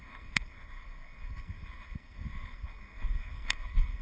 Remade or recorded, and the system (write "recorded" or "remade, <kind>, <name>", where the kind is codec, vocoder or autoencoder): remade, codec, SNAC